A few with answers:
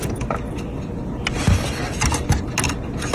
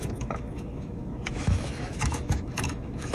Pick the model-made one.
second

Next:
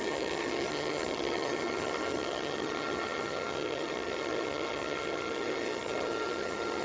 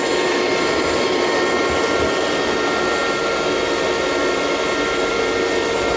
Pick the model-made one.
first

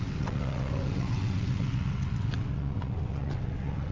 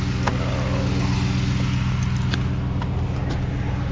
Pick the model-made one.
first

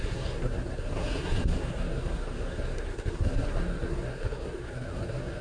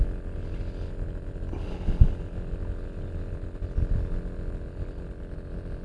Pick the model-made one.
first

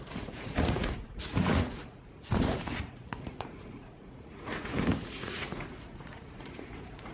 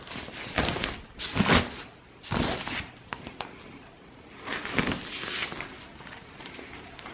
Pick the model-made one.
first